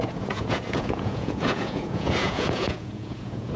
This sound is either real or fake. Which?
fake